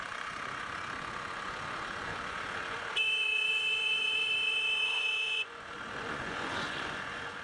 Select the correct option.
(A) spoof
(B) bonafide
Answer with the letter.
A